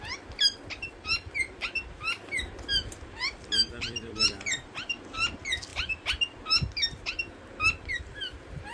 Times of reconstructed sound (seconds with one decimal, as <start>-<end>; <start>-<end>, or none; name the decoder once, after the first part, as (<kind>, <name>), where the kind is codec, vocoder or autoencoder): 0.0-5.7 (vocoder, BigVGAN v2); 8.0-8.7